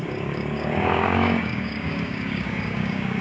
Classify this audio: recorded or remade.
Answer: remade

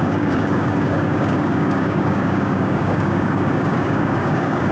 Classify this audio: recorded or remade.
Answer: remade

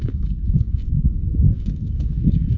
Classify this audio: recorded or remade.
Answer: remade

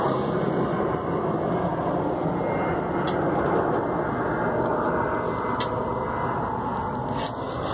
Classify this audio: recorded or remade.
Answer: recorded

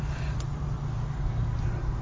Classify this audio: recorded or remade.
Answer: recorded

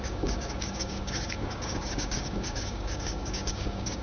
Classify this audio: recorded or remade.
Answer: remade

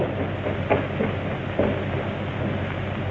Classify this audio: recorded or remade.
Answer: recorded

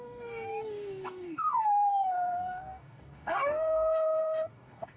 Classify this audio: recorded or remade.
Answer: remade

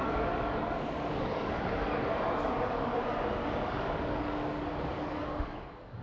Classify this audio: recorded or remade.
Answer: remade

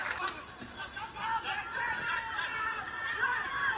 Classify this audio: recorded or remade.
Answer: recorded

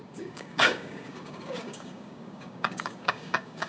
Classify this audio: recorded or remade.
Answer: remade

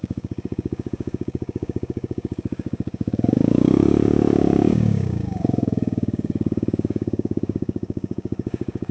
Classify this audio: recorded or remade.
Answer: remade